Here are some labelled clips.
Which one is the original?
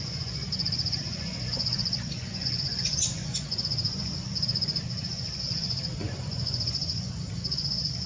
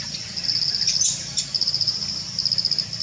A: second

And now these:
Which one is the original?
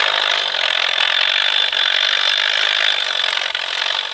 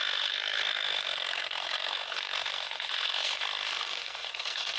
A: first